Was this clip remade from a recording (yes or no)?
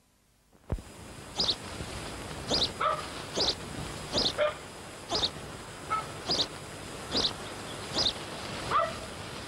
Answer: no